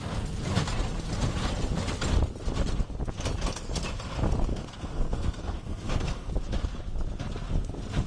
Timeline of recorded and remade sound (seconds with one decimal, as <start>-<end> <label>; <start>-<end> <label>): 0.0-4.5 recorded; 4.5-6.3 remade; 6.3-8.1 recorded